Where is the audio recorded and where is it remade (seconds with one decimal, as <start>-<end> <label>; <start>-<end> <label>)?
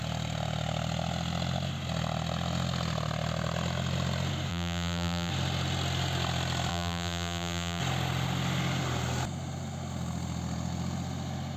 0.0-4.5 recorded; 4.5-5.3 remade; 5.3-6.7 recorded; 6.7-7.8 remade; 7.8-11.6 recorded